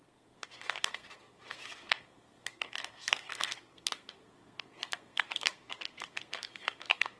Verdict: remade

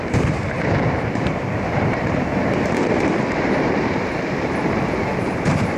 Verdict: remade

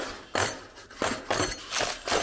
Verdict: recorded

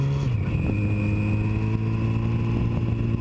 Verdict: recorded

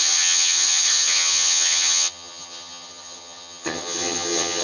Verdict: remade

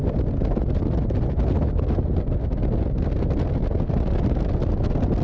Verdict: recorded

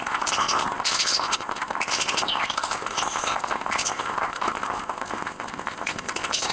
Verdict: remade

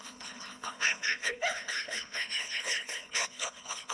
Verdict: remade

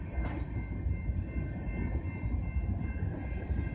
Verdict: recorded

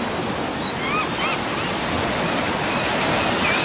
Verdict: recorded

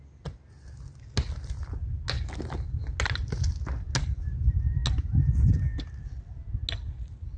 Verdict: recorded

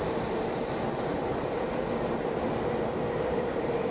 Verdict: recorded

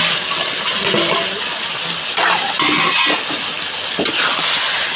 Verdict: recorded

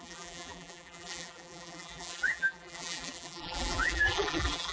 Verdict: remade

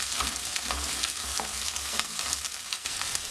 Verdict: remade